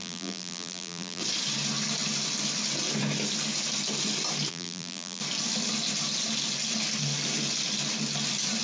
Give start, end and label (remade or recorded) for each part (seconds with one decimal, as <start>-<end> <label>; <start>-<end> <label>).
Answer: 0.0-1.2 remade; 1.2-4.5 recorded; 4.5-5.2 remade; 5.2-8.6 recorded